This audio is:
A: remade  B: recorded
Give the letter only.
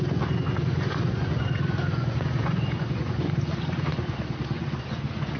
A